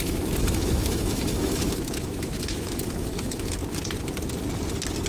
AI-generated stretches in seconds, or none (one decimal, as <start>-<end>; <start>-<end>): 0.0-3.6